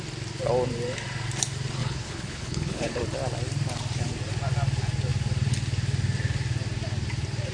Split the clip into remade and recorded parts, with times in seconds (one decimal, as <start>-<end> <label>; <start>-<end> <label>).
0.0-1.8 recorded; 1.8-3.0 remade; 3.0-7.5 recorded